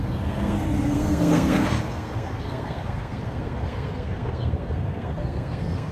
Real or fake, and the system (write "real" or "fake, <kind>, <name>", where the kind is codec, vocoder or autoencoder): fake, codec, SNAC